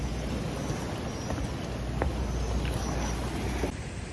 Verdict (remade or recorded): recorded